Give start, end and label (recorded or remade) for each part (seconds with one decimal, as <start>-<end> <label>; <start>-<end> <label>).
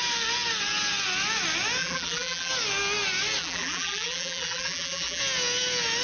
0.0-1.8 recorded; 1.8-2.5 remade; 2.5-3.4 recorded; 3.4-5.2 remade; 5.2-6.0 recorded